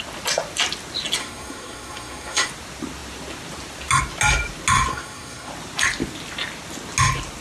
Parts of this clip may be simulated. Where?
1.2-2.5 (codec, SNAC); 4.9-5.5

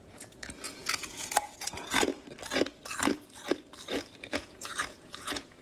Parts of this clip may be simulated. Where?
0.0-2.1 (vocoder, Vocos); 4.3-5.6